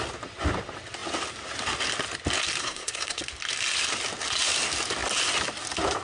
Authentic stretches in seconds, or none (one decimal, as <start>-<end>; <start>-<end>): 0.0-2.6; 3.2-6.0

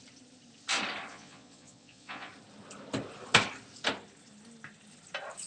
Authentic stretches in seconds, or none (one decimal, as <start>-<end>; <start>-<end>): 0.0-1.1; 2.3-5.5

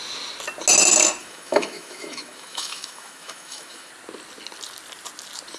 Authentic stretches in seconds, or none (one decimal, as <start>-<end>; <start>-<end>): 0.0-1.2; 3.9-5.6

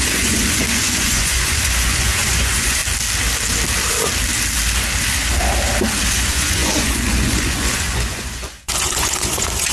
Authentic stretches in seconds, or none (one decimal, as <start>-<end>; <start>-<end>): 2.8-6.1

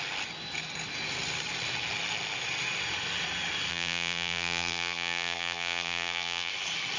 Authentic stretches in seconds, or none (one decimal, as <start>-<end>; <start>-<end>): 0.0-3.7; 6.5-7.0

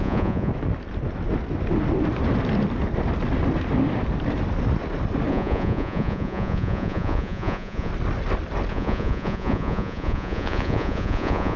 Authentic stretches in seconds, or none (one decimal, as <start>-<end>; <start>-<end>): 0.5-5.3; 7.9-8.7